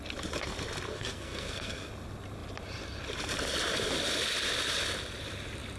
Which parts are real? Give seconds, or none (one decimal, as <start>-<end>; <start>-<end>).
0.0-0.9; 1.9-5.8